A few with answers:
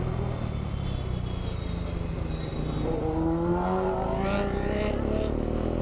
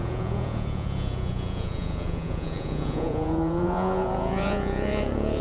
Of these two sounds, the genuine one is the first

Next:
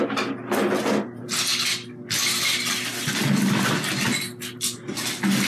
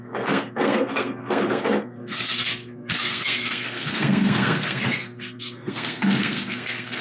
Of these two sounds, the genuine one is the first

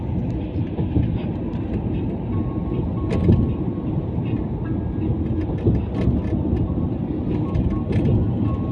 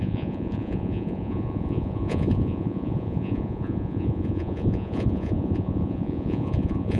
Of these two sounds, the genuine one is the first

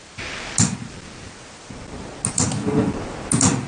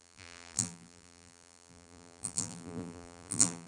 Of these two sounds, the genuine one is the first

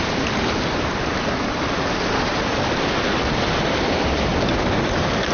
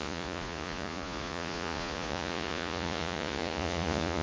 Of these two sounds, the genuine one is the first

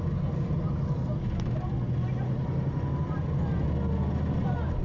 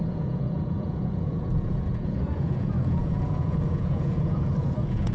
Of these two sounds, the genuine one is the first